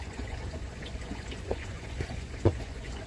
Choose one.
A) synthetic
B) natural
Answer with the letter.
A